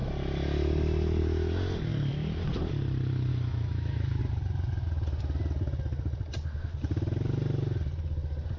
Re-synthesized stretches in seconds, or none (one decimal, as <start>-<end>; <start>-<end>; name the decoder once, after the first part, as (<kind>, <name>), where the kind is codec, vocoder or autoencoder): 3.3-4.2 (autoencoder, DAC-VAE)